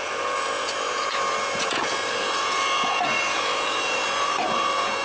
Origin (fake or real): fake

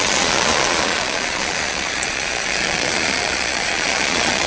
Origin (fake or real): fake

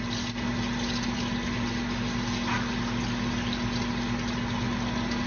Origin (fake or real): real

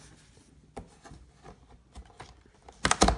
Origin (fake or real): real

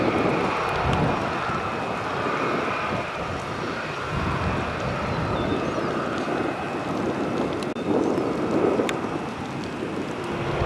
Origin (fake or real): real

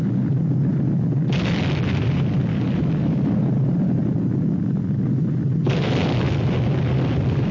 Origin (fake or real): real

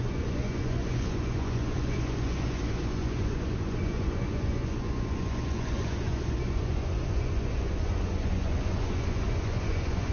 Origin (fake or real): fake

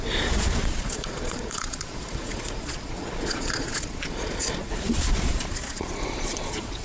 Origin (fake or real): fake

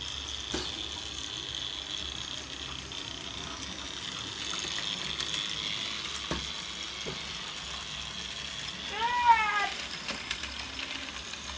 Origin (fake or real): real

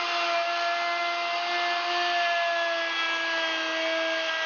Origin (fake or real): real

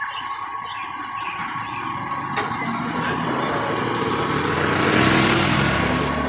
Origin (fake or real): real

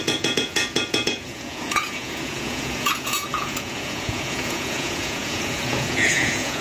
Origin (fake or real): fake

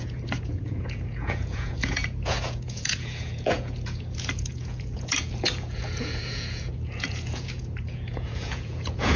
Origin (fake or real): fake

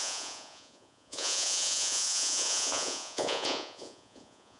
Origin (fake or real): fake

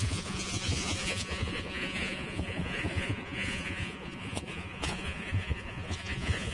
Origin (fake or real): fake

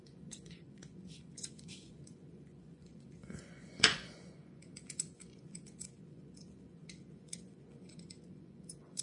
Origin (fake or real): fake